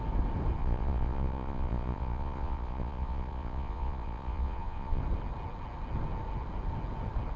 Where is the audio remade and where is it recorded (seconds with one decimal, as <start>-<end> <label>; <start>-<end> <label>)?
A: 0.0-0.6 recorded; 0.6-5.0 remade; 5.0-7.4 recorded